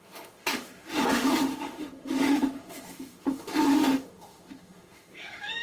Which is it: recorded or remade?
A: remade